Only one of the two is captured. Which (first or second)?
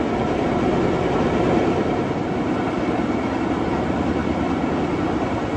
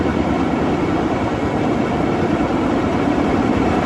first